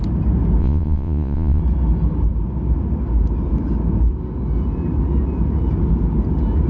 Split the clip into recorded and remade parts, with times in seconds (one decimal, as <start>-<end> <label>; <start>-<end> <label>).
0.0-0.6 recorded; 0.6-1.6 remade; 1.6-6.7 recorded